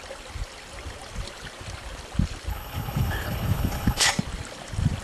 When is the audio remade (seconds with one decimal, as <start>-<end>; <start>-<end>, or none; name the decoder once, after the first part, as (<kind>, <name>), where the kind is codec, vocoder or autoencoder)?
2.5-4.1 (codec, HILCodec)